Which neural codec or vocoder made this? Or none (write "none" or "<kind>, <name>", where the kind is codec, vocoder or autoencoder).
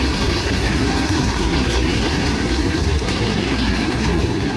codec, SNAC